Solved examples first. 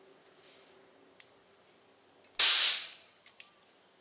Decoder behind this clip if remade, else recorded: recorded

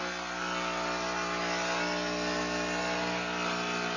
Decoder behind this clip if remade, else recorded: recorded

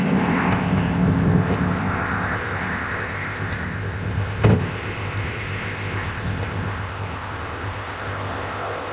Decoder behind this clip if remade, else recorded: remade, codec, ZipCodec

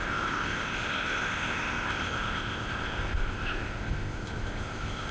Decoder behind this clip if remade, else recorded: remade, codec, ZipCodec